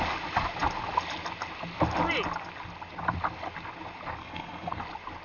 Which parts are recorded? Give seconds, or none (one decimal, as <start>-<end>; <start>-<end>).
0.0-4.2; 4.8-5.2